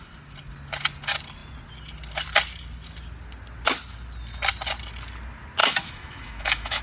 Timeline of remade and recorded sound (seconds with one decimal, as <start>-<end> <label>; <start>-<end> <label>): 0.0-5.6 recorded; 5.6-6.8 remade